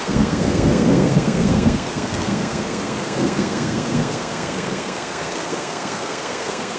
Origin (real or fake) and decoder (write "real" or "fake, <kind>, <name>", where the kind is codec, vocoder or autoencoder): fake, codec, SNAC